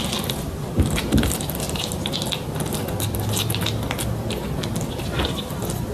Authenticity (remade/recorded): recorded